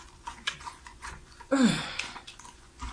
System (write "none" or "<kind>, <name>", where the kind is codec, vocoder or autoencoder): vocoder, Vocos